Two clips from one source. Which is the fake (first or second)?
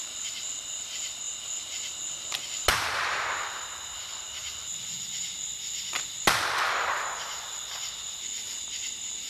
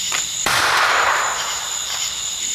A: second